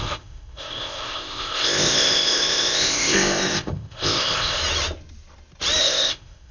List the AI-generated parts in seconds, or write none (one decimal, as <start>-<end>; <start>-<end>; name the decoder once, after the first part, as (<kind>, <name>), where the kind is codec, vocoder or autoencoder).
0.0-4.6 (codec, ZipCodec); 5.8-6.5

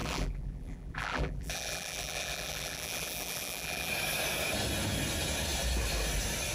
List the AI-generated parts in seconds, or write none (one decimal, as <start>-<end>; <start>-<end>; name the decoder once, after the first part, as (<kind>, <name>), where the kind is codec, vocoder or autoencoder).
0.0-3.9 (vocoder, BigVGAN v2)

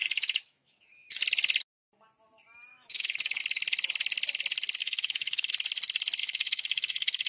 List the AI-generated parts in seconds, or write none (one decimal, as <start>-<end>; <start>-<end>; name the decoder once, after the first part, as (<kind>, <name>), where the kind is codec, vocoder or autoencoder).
0.0-1.2 (autoencoder, DAC-VAE); 2.7-3.4; 4.8-5.5; 6.2-7.3

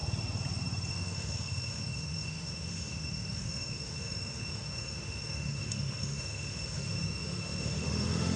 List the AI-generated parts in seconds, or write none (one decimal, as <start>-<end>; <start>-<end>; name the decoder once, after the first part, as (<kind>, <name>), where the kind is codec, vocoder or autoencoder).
0.9-8.4 (autoencoder, DAC-VAE)

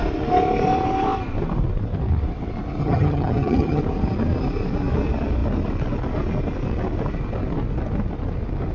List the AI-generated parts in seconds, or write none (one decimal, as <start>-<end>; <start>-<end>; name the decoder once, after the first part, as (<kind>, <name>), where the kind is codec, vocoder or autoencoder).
2.8-3.8 (vocoder, HiFi-GAN)

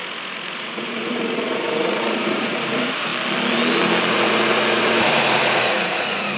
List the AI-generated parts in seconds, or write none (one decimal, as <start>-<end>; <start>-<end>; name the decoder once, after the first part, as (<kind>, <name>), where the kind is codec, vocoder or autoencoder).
0.0-3.1 (vocoder, Vocos); 4.1-6.4

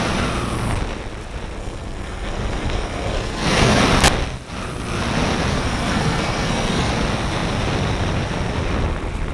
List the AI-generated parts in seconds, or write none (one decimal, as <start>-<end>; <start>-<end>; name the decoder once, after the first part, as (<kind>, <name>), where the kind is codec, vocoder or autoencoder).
1.6-3.8 (codec, SNAC); 5.5-6.9